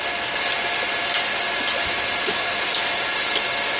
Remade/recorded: recorded